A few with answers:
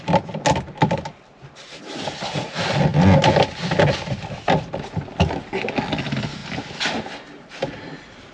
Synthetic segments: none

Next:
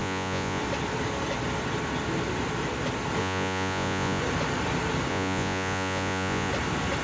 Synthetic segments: 0.0-0.6 (vocoder, Vocos); 3.2-4.2; 5.1-6.5

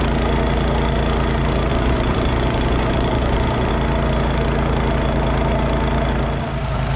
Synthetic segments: 1.7-3.7 (vocoder, Vocos)

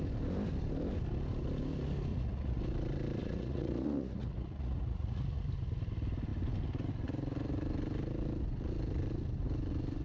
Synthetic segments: 2.1-2.6 (vocoder, Vocos); 3.2-5.4

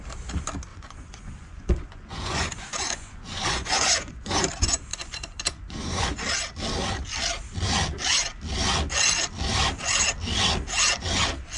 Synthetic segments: 0.7-4.5 (vocoder, Vocos); 4.9-6.2